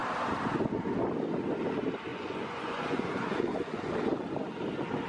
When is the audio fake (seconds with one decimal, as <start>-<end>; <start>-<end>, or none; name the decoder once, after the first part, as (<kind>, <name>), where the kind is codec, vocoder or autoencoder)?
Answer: 2.1-3.9 (vocoder, Vocos)